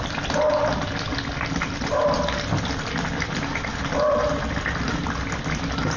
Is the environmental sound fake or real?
real